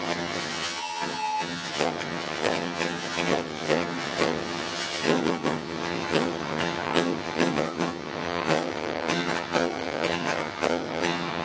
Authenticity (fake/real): fake